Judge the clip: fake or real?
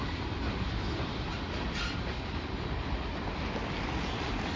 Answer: real